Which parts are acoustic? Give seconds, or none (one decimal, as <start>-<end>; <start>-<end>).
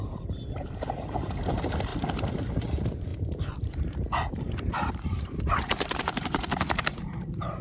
none